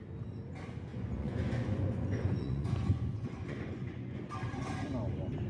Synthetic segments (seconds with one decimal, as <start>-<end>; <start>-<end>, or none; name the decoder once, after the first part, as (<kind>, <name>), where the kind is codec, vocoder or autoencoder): 0.9-4.2 (vocoder, Vocos)